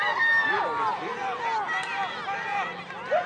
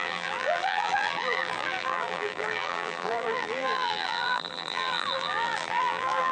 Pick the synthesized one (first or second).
second